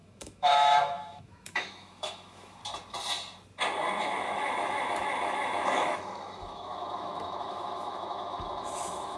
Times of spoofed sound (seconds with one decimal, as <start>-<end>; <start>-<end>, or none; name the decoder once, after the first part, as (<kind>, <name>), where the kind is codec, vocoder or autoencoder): 0.0-2.6 (autoencoder, DAC-VAE); 4.0-9.2